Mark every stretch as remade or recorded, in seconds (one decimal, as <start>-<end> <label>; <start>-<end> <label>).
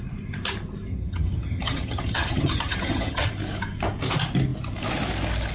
0.0-0.9 recorded; 0.9-3.3 remade; 3.3-5.5 recorded